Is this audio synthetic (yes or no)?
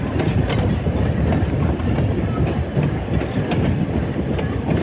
no